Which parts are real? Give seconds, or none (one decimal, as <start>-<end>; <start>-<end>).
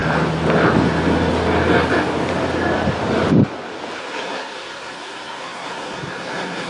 0.0-4.0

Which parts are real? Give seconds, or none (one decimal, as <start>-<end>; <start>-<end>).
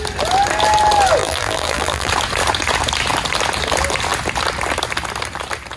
0.0-1.2; 2.1-5.8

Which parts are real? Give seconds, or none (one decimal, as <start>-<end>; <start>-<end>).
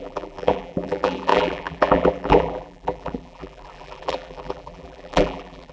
none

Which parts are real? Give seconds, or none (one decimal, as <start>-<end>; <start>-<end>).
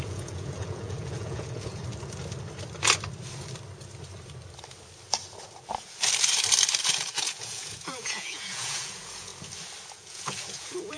1.8-6.8; 9.3-10.0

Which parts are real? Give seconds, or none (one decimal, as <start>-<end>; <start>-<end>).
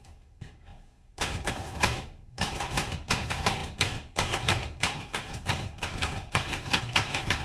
none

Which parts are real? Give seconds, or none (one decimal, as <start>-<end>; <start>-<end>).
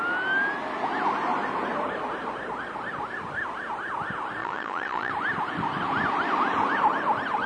0.0-4.4; 5.1-7.5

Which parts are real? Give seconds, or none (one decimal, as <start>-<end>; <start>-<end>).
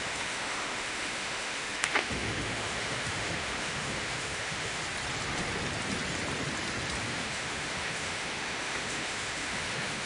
4.8-7.0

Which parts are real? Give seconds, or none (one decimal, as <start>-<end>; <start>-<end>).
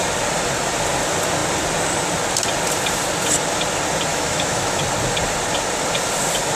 0.0-4.1; 4.8-6.5